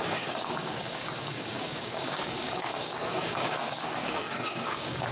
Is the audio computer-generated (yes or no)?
yes